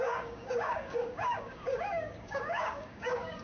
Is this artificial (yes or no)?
yes